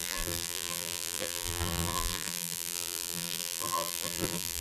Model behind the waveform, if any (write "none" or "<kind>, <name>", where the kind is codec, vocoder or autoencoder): vocoder, BigVGAN v2